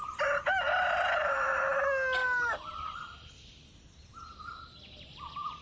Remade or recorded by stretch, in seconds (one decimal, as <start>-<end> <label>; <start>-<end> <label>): 0.0-5.6 recorded

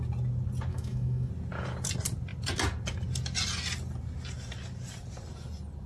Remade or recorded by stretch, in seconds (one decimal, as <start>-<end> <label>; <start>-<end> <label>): 0.0-0.7 recorded; 0.7-1.3 remade; 1.3-5.9 recorded

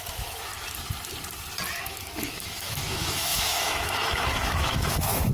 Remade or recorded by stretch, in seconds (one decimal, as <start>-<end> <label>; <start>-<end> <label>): 0.0-0.5 remade; 0.5-1.8 recorded; 1.8-5.3 remade

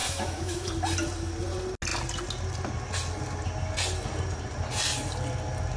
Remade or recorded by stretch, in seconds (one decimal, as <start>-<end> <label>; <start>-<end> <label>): 0.0-0.7 remade; 0.7-5.8 recorded

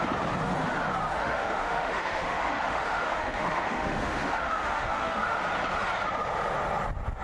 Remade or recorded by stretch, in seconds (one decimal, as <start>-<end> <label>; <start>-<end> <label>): 0.0-1.1 recorded; 1.1-5.4 remade; 5.4-7.2 recorded

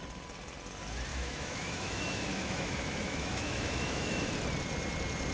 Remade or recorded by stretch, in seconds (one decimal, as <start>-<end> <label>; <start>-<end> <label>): 0.0-1.1 recorded; 1.1-4.3 remade; 4.3-5.3 recorded

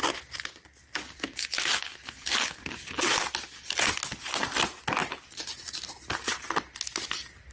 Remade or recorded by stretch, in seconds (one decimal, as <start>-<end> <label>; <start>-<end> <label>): 0.0-7.5 recorded

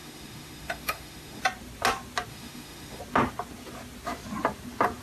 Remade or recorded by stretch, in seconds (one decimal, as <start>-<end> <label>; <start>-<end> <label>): 0.0-1.4 remade; 1.4-2.3 recorded; 2.3-3.0 remade; 3.0-5.0 recorded